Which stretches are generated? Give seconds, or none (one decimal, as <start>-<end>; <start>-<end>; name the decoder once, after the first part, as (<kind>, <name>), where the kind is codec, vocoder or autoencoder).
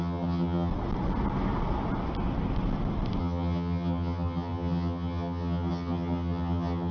0.0-0.7 (vocoder, HiFi-GAN); 3.2-6.9